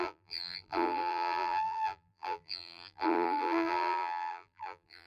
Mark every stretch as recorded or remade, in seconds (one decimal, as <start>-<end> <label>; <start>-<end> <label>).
0.0-5.1 remade